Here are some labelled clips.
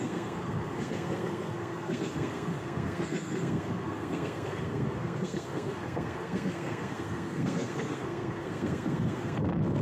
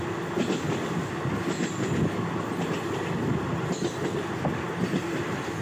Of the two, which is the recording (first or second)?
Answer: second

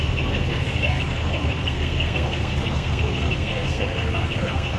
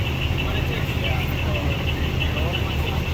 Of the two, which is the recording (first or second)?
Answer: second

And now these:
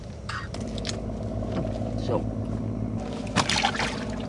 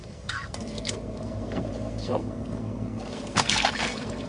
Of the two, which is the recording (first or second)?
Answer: first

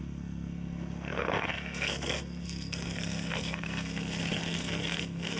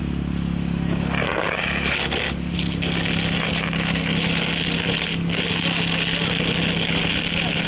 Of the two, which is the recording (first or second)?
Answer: second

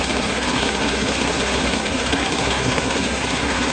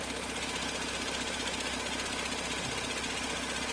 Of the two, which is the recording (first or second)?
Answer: second